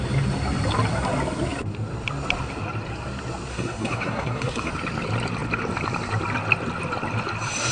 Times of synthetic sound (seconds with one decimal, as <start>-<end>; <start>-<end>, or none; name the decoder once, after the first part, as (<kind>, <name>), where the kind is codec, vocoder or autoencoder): 3.5-4.7 (codec, SNAC)